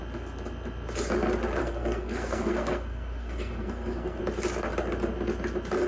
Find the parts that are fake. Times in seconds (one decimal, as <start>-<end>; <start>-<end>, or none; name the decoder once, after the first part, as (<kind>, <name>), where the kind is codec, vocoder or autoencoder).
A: 1.6-4.2 (codec, SNAC)